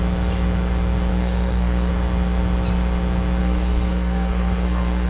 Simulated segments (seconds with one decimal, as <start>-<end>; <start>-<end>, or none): 1.1-1.9; 3.4-5.1